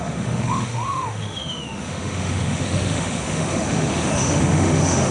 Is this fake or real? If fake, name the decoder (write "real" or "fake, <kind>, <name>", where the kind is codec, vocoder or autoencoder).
fake, autoencoder, DAC-VAE